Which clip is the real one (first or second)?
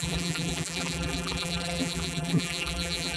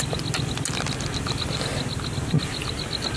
second